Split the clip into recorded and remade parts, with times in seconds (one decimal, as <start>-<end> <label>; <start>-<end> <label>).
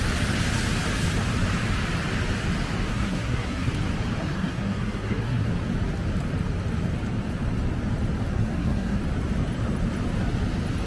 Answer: 0.0-2.9 recorded; 2.9-3.7 remade; 3.7-4.2 recorded; 4.2-5.5 remade; 5.5-8.4 recorded; 8.4-9.0 remade; 9.0-10.9 recorded